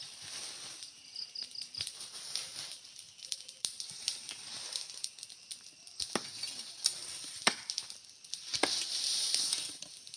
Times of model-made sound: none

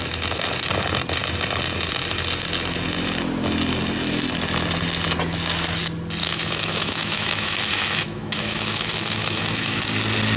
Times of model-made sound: 6.2-9.8

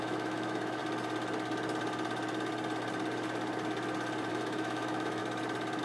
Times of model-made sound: 0.0-0.8; 4.3-5.2